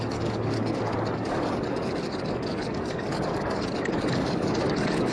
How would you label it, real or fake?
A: fake